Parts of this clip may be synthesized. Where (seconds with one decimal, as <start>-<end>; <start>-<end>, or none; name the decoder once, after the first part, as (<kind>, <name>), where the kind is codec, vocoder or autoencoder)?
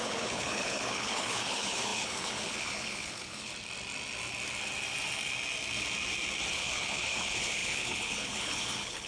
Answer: 0.0-3.5 (codec, HILCodec); 6.5-9.1